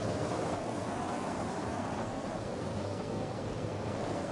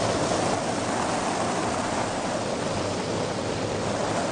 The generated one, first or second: first